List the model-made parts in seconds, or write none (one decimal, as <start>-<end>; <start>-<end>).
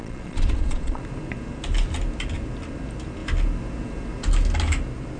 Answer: 0.0-1.0